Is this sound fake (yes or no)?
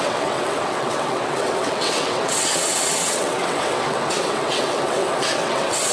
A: yes